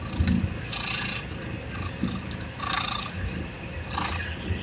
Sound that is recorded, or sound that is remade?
recorded